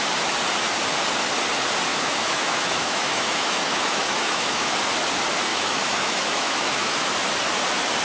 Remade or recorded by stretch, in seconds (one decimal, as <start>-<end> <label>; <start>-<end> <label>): 0.0-1.9 recorded; 1.9-4.7 remade; 4.7-5.5 recorded; 5.5-7.1 remade; 7.1-8.0 recorded